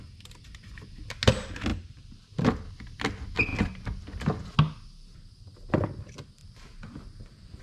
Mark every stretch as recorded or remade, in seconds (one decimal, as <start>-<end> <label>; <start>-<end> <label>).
0.0-7.6 recorded